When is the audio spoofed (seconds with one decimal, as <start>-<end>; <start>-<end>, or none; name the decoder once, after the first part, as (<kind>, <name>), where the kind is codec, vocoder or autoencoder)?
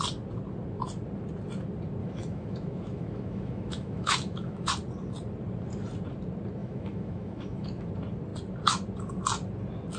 2.0-4.7 (autoencoder, DAC-VAE); 6.6-7.9